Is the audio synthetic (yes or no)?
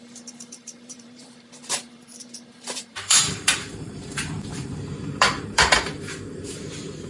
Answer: yes